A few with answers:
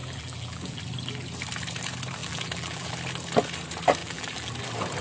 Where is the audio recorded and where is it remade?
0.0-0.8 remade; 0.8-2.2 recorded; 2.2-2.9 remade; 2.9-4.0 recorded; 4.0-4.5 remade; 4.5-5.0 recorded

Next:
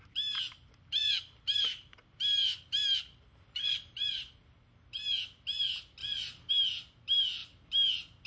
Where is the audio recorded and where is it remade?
0.0-1.0 recorded; 1.0-4.3 remade; 4.3-8.3 recorded

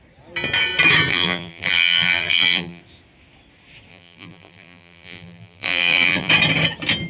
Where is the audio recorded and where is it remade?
0.0-1.1 recorded; 1.1-2.8 remade; 2.8-3.9 recorded; 3.9-6.3 remade; 6.3-7.1 recorded

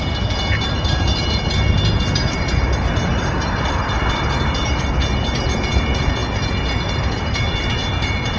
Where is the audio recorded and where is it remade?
0.0-8.4 remade

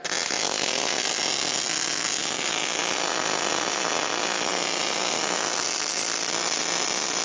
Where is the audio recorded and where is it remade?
0.0-2.2 recorded; 2.2-2.8 remade; 2.8-7.2 recorded